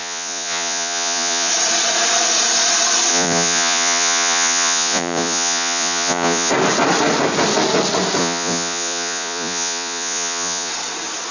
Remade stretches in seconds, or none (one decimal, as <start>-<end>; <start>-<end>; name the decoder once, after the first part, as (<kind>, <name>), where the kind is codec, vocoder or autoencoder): 0.0-1.5 (vocoder, Vocos); 3.1-6.5; 8.2-10.7